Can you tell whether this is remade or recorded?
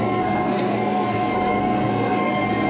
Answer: remade